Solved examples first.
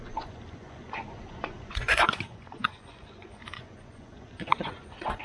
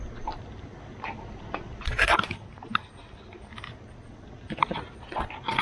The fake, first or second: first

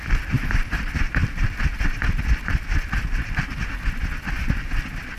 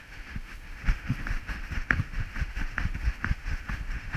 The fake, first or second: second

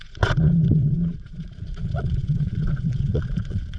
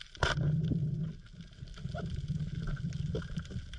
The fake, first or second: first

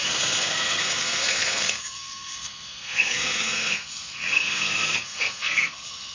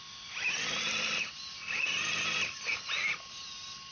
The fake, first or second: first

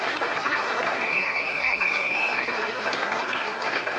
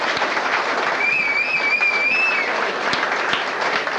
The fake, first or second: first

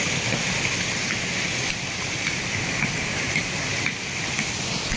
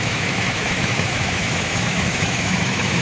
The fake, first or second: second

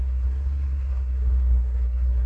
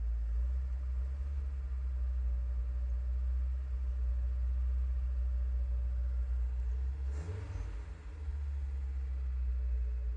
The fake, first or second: first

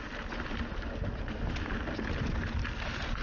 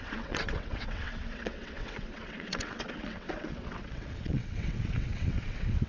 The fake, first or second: second